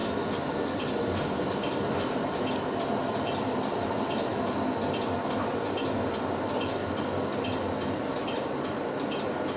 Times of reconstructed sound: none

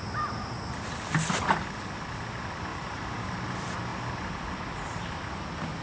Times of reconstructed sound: 2.7-3.4 (vocoder, BigVGAN v2)

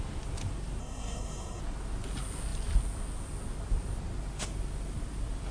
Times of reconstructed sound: 0.8-1.6 (codec, SNAC)

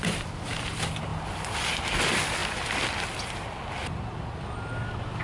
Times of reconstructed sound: none

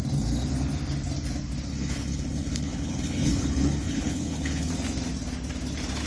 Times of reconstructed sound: 1.7-4.7 (codec, HILCodec)

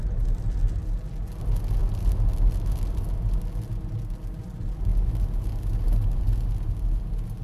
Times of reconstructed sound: none

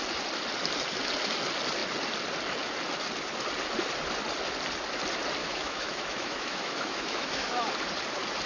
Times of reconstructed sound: 5.4-7.7 (autoencoder, DAC-VAE)